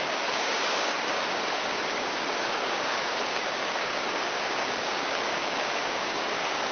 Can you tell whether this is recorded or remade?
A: remade